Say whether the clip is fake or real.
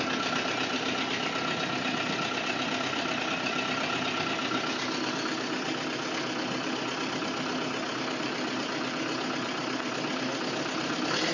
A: real